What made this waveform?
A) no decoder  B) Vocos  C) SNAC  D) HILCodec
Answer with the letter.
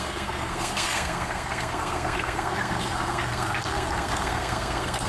C